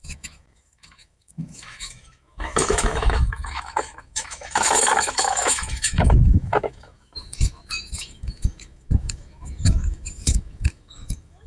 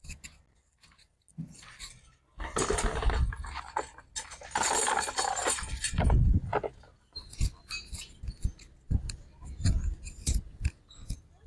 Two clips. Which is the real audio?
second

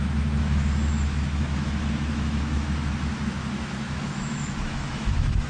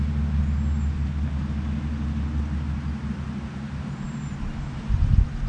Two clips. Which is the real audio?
second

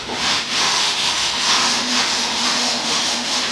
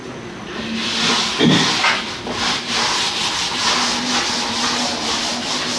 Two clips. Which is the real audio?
second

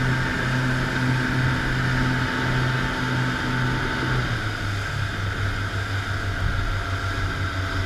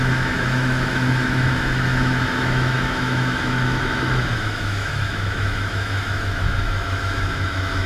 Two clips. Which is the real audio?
first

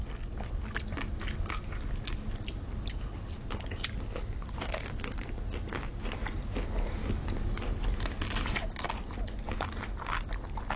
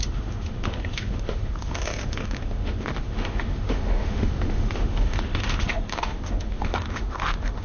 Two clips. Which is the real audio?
first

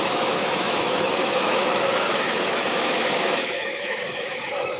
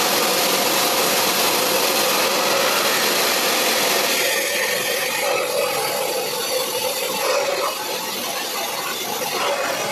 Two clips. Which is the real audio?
second